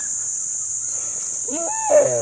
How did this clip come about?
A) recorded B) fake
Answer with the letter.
A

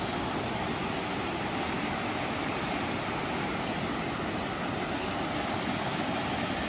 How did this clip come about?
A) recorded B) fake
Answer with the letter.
A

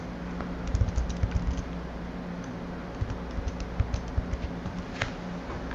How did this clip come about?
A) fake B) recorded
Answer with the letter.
B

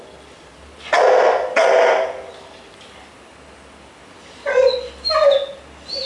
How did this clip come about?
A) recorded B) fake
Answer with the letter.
A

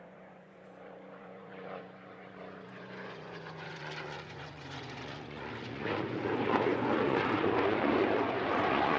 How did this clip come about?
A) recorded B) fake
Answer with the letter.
B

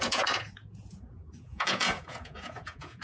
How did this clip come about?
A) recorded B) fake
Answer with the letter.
B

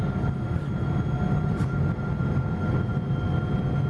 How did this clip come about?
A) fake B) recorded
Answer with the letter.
B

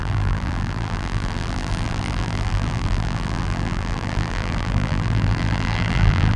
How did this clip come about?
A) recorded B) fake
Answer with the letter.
B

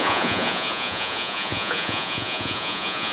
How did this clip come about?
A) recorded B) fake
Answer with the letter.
B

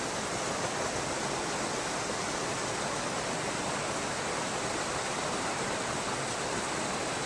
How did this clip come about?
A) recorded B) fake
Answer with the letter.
A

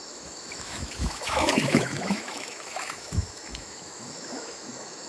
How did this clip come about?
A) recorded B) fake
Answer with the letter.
B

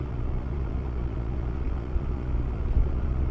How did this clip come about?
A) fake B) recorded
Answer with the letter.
A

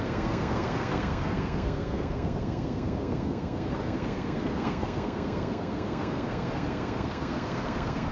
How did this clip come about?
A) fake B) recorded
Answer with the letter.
A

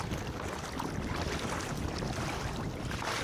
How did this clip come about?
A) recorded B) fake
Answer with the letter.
A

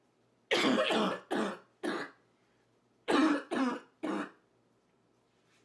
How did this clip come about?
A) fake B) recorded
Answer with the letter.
B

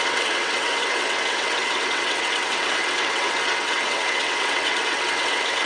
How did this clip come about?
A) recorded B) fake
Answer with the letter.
B